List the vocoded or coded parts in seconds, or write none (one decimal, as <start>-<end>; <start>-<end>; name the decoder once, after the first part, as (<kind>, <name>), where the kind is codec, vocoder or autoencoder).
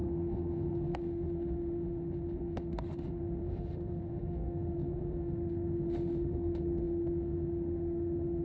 0.0-8.4 (autoencoder, DAC-VAE)